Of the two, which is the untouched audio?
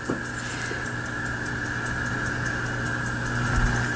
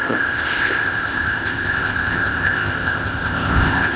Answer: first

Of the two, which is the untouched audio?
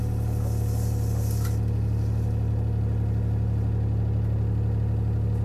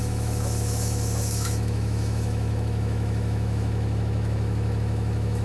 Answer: first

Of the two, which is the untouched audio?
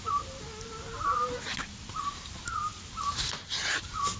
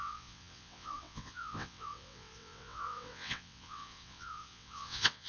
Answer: first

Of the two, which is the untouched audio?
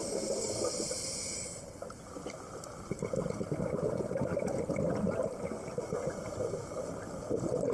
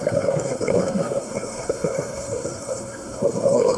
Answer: first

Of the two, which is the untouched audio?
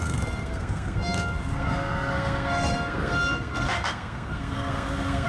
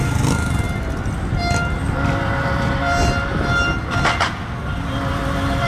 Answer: second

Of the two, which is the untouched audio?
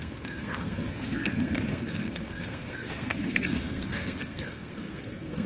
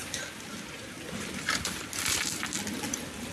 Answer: second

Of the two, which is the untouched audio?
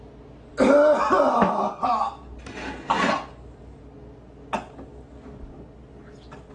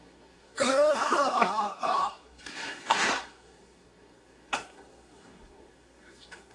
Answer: first